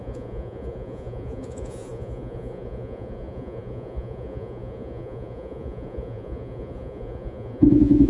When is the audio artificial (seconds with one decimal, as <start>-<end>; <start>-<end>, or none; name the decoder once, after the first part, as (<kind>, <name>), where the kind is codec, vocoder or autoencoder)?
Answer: 0.0-8.1 (vocoder, Vocos)